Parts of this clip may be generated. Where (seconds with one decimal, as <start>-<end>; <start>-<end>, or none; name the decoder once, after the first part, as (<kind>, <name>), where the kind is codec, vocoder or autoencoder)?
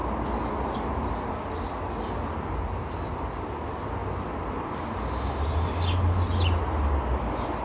none